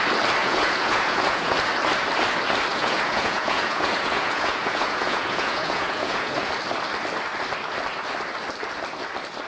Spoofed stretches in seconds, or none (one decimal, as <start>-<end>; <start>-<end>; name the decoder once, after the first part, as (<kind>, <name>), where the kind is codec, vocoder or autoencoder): 0.4-1.5 (vocoder, Vocos); 2.7-6.5